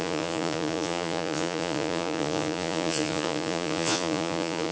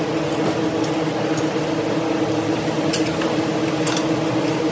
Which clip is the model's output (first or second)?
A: first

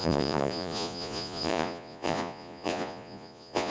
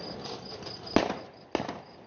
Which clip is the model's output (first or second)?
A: first